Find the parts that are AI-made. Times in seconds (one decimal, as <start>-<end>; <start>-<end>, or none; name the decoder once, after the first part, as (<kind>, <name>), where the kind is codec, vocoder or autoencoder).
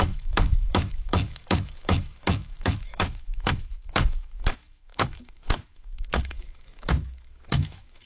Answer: 0.0-8.1 (autoencoder, DAC-VAE)